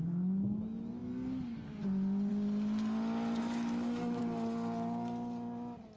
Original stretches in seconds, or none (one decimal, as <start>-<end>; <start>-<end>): 0.0-3.4; 4.2-6.0